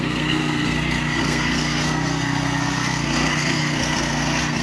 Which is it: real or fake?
fake